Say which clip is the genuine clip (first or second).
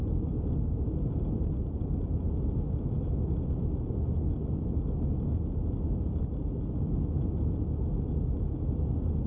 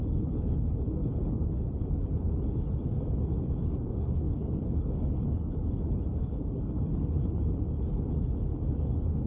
first